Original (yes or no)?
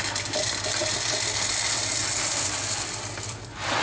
yes